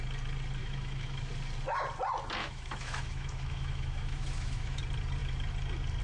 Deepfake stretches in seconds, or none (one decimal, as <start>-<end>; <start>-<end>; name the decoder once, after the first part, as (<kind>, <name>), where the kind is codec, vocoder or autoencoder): 0.6-1.3 (autoencoder, DAC-VAE); 2.4-4.8